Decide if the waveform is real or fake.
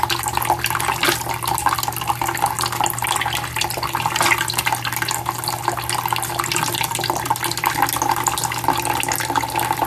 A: real